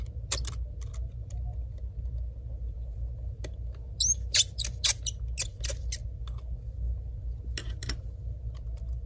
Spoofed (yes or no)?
no